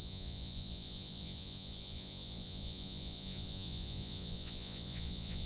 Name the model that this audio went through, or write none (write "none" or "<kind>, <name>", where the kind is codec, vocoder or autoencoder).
vocoder, Vocos